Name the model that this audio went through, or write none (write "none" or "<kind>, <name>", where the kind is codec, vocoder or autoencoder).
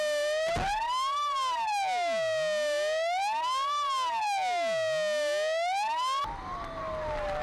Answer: none